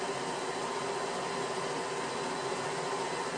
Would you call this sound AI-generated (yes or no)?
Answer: no